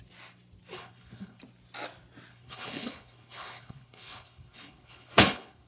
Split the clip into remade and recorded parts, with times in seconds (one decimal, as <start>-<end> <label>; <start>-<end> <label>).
0.0-0.7 recorded; 0.7-1.4 remade; 1.4-2.3 recorded; 2.3-5.7 remade